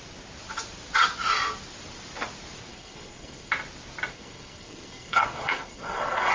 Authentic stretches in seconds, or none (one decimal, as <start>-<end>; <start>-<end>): 0.0-2.7; 3.5-4.1